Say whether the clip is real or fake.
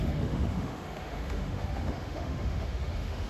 fake